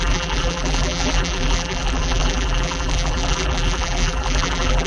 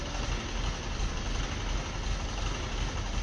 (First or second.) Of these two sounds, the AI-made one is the first